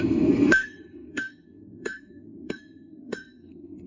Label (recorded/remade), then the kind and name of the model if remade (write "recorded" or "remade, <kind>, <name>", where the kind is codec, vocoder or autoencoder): remade, codec, SNAC